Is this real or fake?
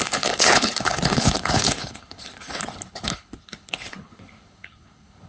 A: fake